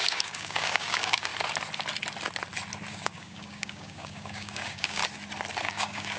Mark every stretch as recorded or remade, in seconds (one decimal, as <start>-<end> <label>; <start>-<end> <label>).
0.0-1.3 remade; 1.3-2.9 recorded; 2.9-5.0 remade; 5.0-5.6 recorded; 5.6-6.2 remade